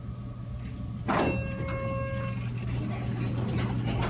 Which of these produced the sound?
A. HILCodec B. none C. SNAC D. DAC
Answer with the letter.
B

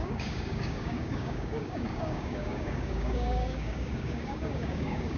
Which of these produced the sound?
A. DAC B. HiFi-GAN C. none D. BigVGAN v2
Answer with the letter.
A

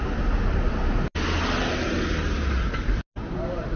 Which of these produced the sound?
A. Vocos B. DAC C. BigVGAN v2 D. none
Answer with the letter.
D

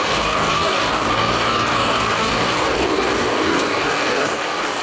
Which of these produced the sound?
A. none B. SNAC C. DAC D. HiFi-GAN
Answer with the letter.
C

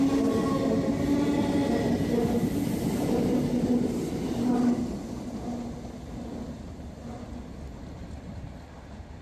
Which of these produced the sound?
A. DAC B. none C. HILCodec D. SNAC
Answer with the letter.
B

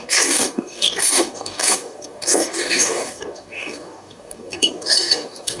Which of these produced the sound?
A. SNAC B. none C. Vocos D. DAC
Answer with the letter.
D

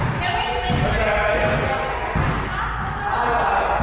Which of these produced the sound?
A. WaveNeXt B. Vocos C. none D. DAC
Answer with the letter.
C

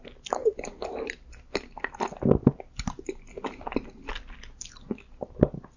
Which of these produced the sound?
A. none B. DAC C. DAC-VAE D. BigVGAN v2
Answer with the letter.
A